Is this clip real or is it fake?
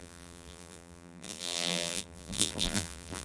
fake